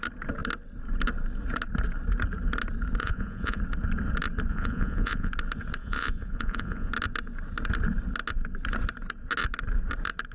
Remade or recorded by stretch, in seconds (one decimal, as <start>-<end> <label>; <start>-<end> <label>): 0.0-3.0 recorded; 3.0-3.6 remade; 3.6-4.5 recorded; 4.5-5.3 remade; 5.3-5.8 recorded; 5.8-6.9 remade; 6.9-10.3 recorded